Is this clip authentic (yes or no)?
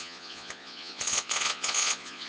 no